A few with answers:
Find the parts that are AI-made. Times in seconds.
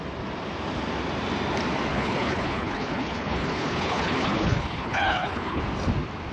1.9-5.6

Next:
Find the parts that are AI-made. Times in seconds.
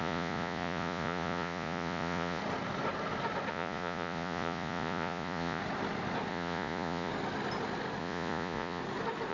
0.0-2.4; 3.5-5.6; 6.3-7.1; 8.0-8.8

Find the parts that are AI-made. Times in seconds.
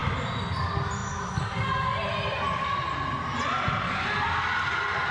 none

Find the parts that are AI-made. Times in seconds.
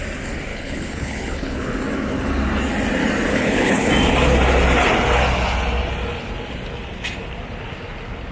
0.5-1.7; 3.3-3.9